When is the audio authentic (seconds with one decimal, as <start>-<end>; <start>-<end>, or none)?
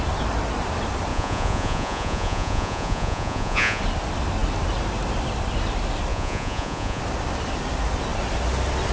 0.0-1.1; 3.8-6.1; 7.0-8.9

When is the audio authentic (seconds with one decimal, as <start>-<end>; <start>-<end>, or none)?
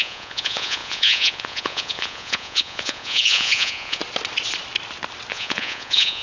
4.0-5.3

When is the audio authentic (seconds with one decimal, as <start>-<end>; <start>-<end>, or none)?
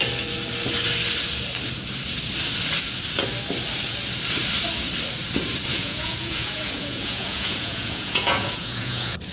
0.0-5.7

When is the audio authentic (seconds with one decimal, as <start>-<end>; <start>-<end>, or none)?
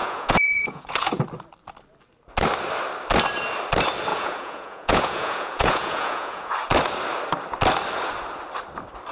1.2-4.1; 6.5-9.1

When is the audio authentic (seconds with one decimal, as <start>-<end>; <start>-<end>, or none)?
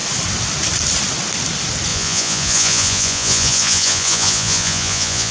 0.0-1.9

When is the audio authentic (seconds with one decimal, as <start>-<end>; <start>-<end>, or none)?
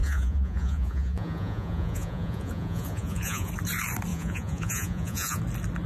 3.5-4.1; 5.4-5.9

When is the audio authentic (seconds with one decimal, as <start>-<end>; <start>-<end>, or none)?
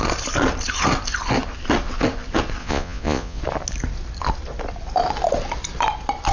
0.0-2.6; 3.4-6.3